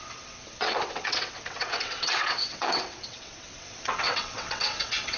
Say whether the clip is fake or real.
fake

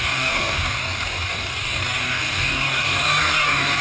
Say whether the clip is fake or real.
fake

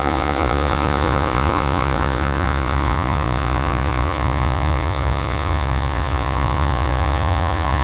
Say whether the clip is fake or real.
fake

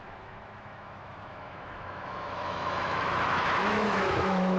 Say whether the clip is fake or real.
fake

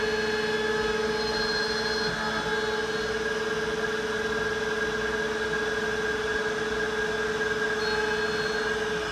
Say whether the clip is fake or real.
real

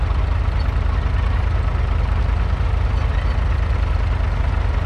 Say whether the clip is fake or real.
real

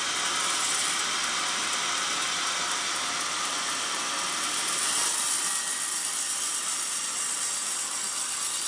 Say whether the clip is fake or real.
fake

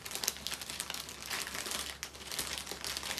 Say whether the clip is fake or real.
real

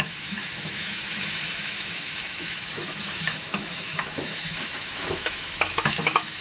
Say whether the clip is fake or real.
fake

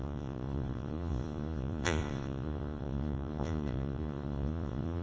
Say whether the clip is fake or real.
fake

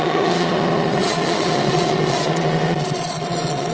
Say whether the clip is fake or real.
fake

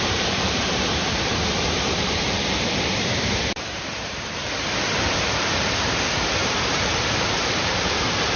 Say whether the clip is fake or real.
fake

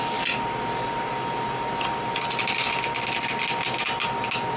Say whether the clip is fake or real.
real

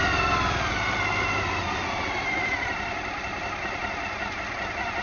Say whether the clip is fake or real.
real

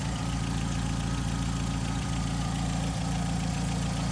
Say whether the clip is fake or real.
real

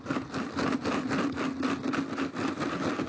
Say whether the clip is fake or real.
real